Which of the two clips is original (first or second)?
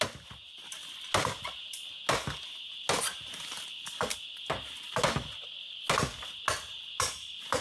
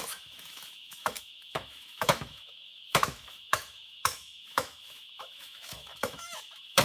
first